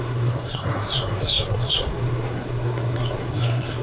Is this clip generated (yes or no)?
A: yes